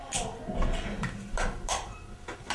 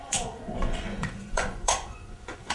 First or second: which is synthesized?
second